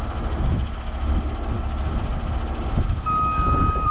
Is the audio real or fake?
real